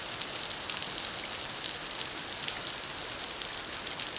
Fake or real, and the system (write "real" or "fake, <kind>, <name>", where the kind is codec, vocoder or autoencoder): real